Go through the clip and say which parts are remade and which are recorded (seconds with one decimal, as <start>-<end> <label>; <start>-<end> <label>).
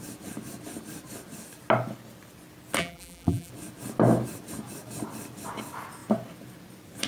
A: 0.0-2.8 recorded; 2.8-3.5 remade; 3.5-7.1 recorded